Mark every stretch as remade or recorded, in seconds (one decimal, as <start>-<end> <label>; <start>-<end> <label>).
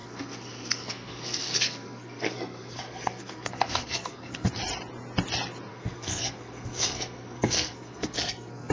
0.0-4.5 remade; 4.5-5.7 recorded; 5.7-8.7 remade